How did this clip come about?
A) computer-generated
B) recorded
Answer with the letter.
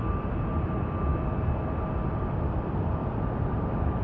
B